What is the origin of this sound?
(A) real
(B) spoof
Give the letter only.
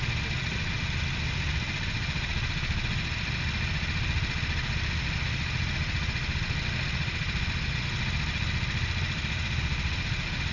A